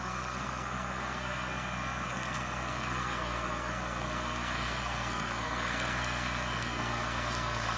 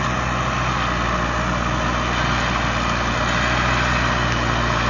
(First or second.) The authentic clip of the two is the second